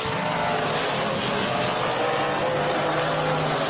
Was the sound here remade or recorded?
recorded